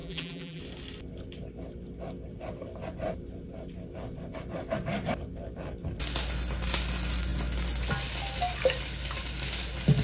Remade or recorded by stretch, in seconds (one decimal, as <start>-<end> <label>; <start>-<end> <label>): 0.0-0.6 remade; 0.6-10.0 recorded